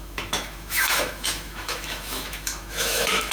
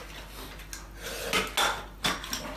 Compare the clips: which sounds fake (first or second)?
first